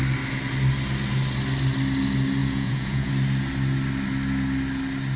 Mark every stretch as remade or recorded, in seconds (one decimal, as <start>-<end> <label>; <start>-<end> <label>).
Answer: 0.0-2.4 recorded; 2.4-3.1 remade; 3.1-5.2 recorded